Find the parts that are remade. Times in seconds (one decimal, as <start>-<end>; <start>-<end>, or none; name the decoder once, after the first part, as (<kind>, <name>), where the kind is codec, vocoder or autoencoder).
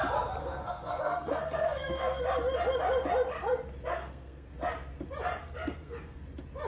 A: 0.4-2.2 (codec, SNAC); 3.9-4.5; 5.4-6.2